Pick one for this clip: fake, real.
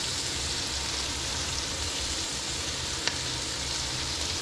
real